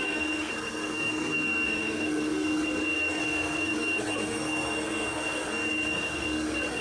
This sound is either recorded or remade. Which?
remade